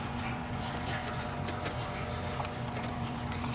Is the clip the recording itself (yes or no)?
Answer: no